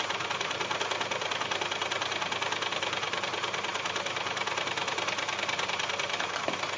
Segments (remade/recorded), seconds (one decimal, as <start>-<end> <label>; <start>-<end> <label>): 0.0-6.8 recorded